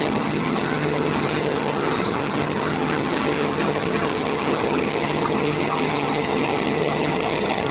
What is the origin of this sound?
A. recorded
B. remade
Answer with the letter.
B